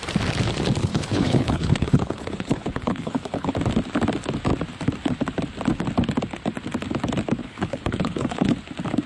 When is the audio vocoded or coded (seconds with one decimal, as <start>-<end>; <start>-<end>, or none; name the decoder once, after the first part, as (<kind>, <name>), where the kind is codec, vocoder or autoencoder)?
0.8-3.5 (codec, HILCodec); 7.4-8.5